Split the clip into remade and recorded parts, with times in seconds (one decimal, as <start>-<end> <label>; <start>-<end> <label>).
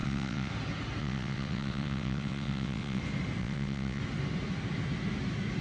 0.0-0.5 remade; 0.5-1.0 recorded; 1.0-3.0 remade; 3.0-3.4 recorded; 3.4-4.0 remade; 4.0-5.6 recorded